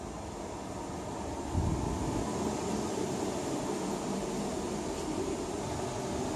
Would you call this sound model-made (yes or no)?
no